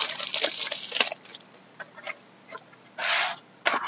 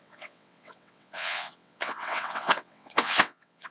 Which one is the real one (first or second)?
first